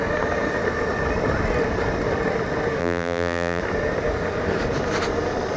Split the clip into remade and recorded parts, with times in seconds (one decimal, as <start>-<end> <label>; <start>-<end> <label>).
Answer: 0.0-2.8 recorded; 2.8-3.6 remade; 3.6-5.6 recorded

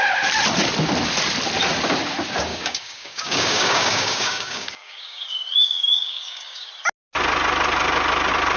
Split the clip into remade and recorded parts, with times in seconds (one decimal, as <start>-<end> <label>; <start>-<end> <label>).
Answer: 0.0-2.5 recorded; 2.5-6.7 remade; 6.7-8.6 recorded

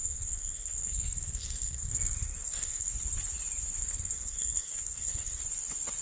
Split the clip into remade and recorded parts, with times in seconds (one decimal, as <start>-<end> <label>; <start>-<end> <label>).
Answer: 0.0-2.9 remade; 2.9-3.8 recorded; 3.8-5.4 remade; 5.4-6.0 recorded

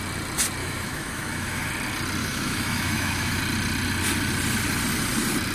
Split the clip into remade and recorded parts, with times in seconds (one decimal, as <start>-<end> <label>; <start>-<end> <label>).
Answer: 0.0-0.6 recorded; 0.6-1.7 remade; 1.7-2.2 recorded; 2.2-3.4 remade; 3.4-5.5 recorded

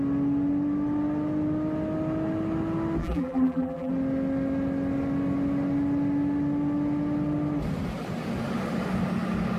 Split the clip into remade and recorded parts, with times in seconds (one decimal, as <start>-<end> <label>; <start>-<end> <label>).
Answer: 0.0-3.0 recorded; 3.0-3.9 remade; 3.9-9.6 recorded